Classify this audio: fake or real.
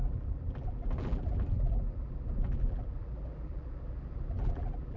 fake